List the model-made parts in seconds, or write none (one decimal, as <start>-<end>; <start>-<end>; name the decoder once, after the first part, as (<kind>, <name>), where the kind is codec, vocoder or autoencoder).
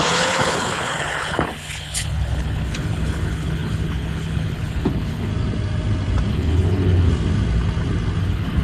0.0-5.3 (codec, HILCodec); 6.3-7.1; 8.2-8.6